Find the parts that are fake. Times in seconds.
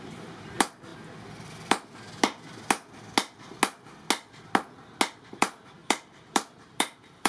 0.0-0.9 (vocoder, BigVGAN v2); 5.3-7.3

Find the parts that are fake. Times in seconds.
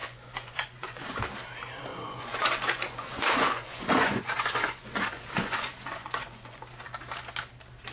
0.0-1.2 (vocoder, Vocos); 1.9-6.6